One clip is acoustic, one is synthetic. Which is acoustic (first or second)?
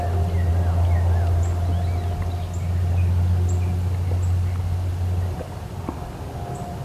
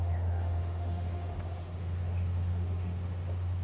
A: first